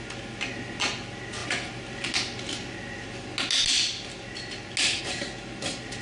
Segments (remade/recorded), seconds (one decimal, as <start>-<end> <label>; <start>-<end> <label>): 0.0-6.0 recorded